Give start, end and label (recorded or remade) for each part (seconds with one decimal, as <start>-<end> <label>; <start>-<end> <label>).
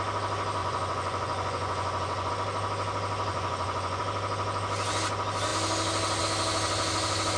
0.0-0.6 recorded; 0.6-2.3 remade; 2.3-3.3 recorded; 3.3-4.0 remade; 4.0-7.4 recorded